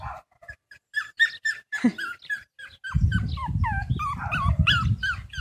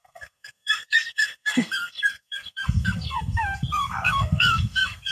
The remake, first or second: second